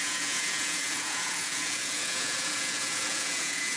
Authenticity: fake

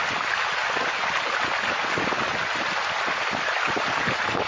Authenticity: real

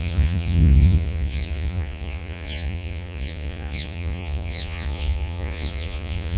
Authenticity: fake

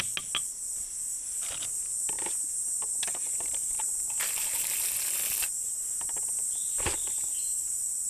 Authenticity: real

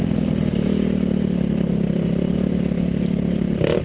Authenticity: real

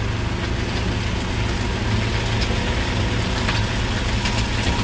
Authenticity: real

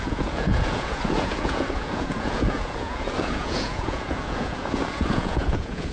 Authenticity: fake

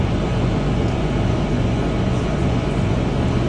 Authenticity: fake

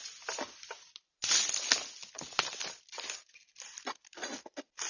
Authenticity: real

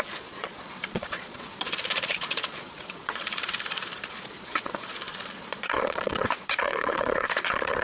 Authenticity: fake